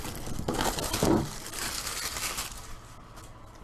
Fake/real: real